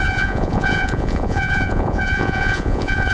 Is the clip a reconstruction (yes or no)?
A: yes